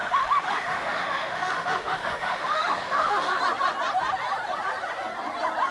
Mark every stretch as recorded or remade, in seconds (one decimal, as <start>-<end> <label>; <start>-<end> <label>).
0.0-3.4 remade; 3.4-5.7 recorded